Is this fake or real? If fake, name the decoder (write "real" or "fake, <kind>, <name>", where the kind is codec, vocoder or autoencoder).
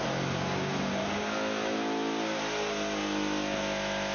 real